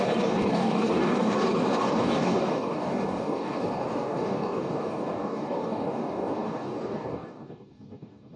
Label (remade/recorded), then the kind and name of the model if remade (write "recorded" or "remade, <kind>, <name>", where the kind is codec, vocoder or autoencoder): remade, codec, DAC